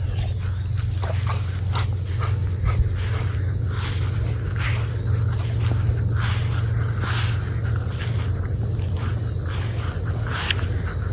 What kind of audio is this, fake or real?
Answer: real